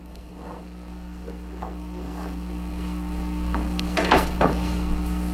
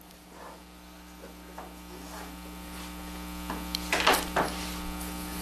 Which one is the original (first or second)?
second